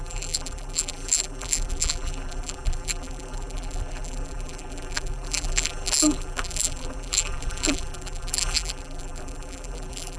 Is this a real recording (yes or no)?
no